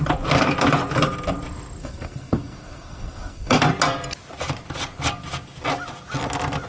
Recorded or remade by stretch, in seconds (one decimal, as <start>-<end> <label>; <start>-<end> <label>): 0.0-1.8 recorded; 1.8-3.6 remade; 3.6-6.7 recorded